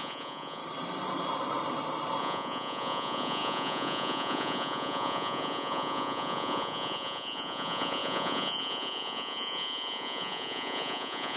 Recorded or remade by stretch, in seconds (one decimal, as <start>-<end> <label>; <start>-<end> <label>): 0.0-0.6 remade; 0.6-2.2 recorded; 2.2-11.4 remade